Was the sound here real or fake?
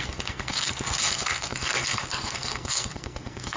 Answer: fake